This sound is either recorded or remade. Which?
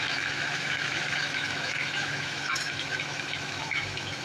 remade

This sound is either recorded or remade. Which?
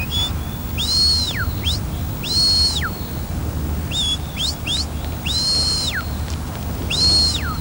recorded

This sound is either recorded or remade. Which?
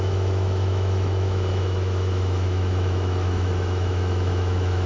remade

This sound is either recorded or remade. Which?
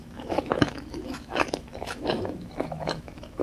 remade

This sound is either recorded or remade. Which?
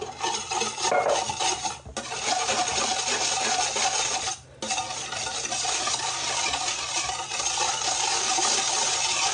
recorded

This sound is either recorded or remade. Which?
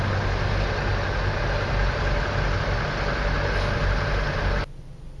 recorded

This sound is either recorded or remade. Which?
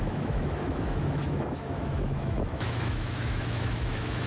remade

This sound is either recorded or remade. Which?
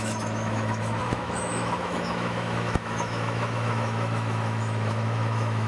remade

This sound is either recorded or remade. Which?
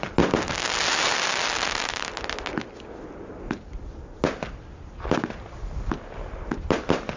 recorded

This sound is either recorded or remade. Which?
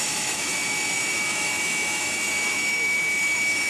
remade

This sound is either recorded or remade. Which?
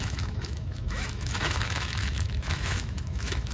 remade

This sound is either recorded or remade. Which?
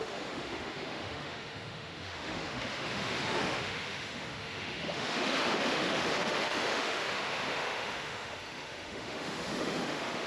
remade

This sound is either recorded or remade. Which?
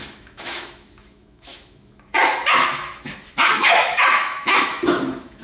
remade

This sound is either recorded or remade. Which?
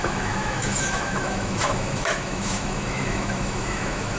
remade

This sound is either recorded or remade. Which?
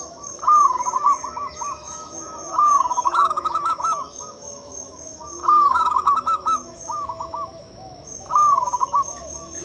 remade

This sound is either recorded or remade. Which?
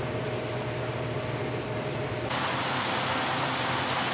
recorded